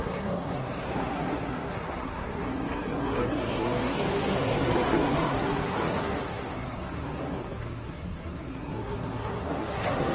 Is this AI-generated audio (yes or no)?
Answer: yes